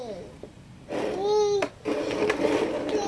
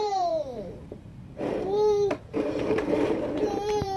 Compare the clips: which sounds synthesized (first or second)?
second